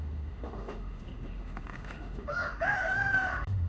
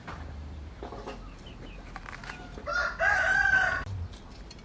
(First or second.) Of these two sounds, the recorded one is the second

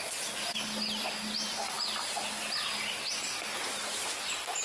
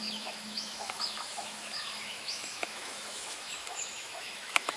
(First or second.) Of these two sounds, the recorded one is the first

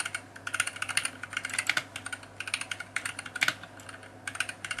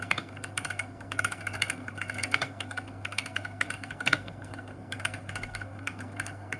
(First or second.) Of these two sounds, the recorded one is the first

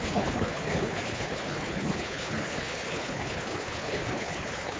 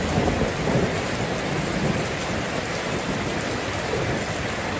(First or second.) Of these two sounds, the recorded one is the second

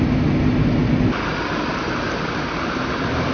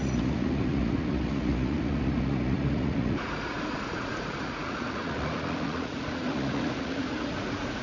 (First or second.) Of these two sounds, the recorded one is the first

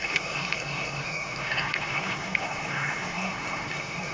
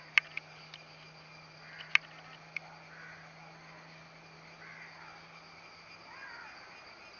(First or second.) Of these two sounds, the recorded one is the second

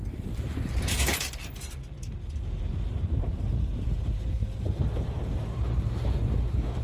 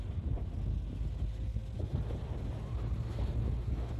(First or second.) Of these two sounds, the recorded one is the second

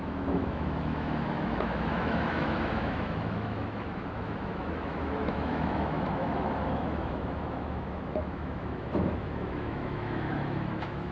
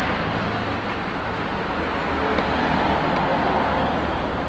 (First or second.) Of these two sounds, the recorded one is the second